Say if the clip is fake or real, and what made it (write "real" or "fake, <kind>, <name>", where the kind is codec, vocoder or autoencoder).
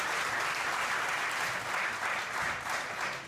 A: real